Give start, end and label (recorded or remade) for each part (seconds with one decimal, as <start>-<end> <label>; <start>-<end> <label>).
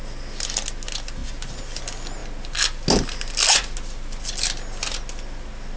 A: 0.0-5.8 recorded